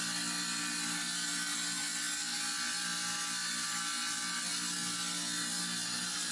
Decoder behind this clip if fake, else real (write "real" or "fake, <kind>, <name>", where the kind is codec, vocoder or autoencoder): real